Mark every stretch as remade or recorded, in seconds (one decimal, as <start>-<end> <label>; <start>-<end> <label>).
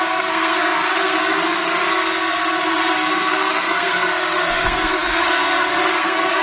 0.0-6.4 remade